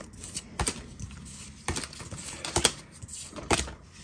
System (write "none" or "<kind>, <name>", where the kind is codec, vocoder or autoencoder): none